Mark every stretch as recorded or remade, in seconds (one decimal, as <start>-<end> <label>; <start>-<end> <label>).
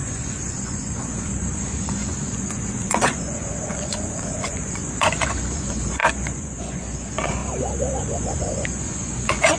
0.0-7.4 remade; 7.4-8.0 recorded; 8.0-9.6 remade